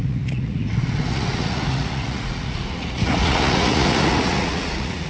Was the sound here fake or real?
fake